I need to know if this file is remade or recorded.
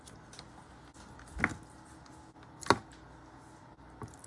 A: recorded